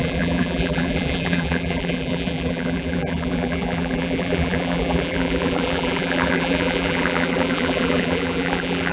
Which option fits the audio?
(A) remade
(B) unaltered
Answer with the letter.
A